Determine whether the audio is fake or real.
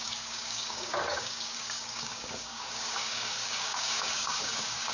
fake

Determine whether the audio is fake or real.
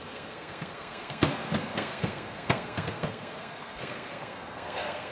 fake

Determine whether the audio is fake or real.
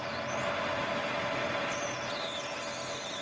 real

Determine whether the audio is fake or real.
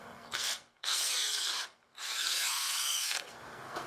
fake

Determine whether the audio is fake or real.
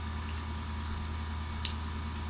real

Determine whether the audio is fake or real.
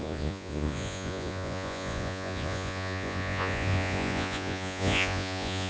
fake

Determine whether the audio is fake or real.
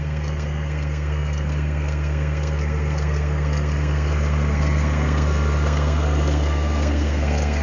fake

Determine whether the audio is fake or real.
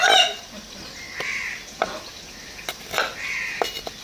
real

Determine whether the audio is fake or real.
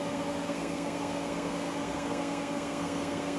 fake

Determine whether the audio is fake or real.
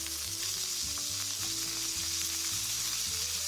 real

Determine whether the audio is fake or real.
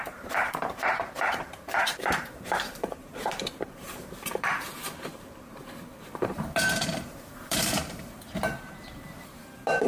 fake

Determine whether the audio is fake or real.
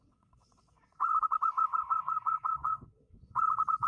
fake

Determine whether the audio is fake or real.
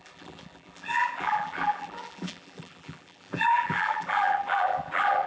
fake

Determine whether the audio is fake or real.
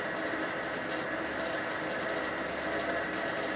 real